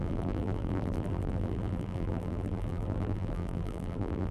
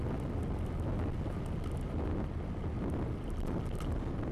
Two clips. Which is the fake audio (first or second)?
first